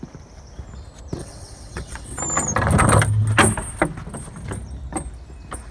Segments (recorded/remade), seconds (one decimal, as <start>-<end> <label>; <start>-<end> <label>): 0.0-1.2 recorded; 1.2-2.2 remade; 2.2-5.7 recorded